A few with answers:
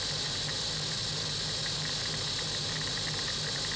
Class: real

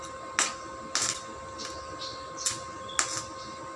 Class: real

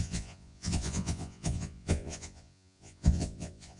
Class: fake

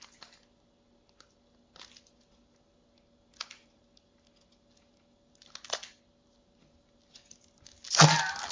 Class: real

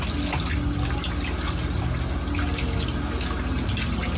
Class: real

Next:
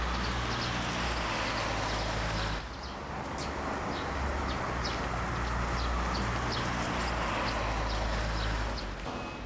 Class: real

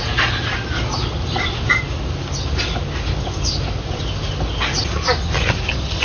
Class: real